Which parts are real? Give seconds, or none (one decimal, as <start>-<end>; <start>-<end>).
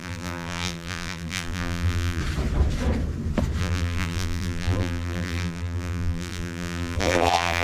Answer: 2.2-3.6